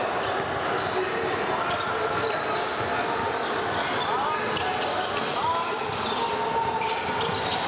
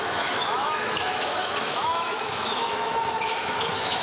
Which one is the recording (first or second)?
first